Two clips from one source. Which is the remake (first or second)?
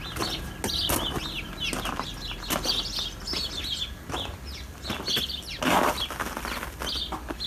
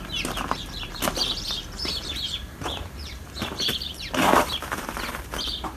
second